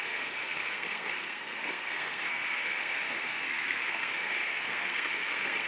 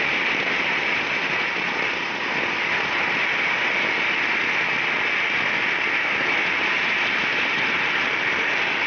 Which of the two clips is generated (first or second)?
first